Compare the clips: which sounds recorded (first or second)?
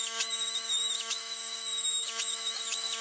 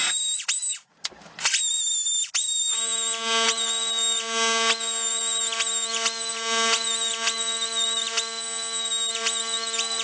second